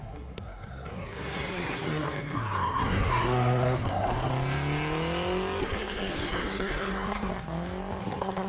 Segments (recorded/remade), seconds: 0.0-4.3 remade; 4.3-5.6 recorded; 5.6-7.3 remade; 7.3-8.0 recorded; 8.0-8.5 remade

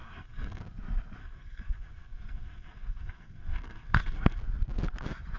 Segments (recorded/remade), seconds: 0.0-0.6 remade; 0.6-1.2 recorded; 1.2-4.4 remade; 4.4-5.4 recorded

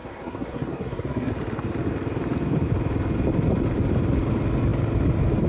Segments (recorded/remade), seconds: 0.0-1.3 remade; 1.3-5.5 recorded

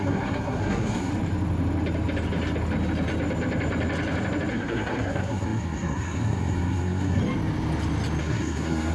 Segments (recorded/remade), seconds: 0.0-1.1 remade; 1.1-4.5 recorded; 4.5-7.2 remade; 7.2-8.2 recorded; 8.2-8.9 remade

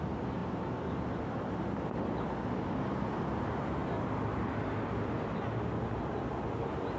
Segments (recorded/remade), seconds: 0.0-7.0 recorded

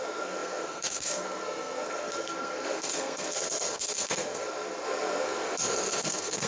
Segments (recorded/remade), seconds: 0.0-6.5 remade